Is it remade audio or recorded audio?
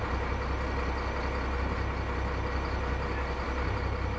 recorded